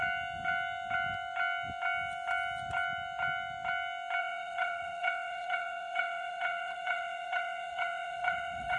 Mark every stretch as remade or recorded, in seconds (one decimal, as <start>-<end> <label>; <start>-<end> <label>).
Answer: 0.0-4.2 recorded; 4.2-8.8 remade